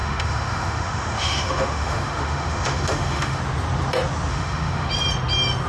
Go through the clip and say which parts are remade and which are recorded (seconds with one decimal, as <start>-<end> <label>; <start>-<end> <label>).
0.0-3.4 remade; 3.4-4.3 recorded; 4.3-4.9 remade; 4.9-5.7 recorded